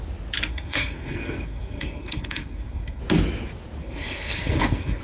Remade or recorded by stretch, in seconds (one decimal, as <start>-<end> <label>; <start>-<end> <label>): 0.0-0.5 recorded; 0.5-3.0 remade; 3.0-3.8 recorded; 3.8-5.0 remade